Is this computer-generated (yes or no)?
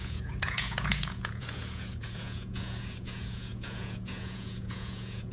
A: yes